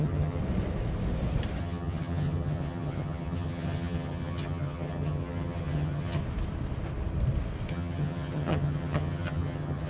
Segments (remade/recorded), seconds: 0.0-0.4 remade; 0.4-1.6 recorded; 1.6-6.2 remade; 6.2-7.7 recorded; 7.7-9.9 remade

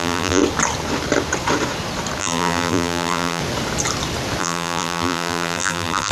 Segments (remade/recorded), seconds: 0.0-0.4 remade; 0.4-2.2 recorded; 2.2-3.4 remade; 3.4-4.4 recorded; 4.4-6.1 remade

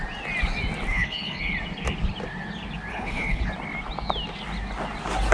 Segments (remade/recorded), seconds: 0.0-0.9 recorded; 0.9-1.4 remade; 1.4-2.9 recorded; 2.9-3.5 remade; 3.5-5.3 recorded

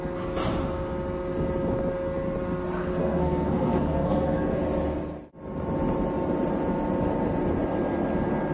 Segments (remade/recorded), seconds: 0.0-3.0 recorded; 3.0-4.6 remade; 4.6-8.5 recorded

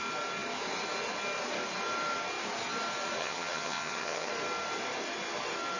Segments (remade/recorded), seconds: 0.0-3.2 recorded; 3.2-4.3 remade; 4.3-5.8 recorded

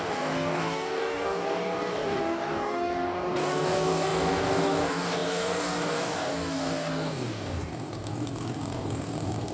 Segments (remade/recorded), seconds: 0.0-9.5 remade

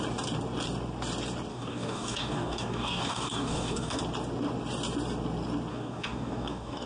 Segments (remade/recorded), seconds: 0.0-1.5 recorded; 1.5-4.0 remade; 4.0-5.7 recorded; 5.7-6.9 remade